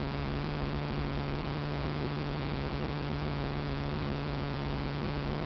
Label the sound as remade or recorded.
remade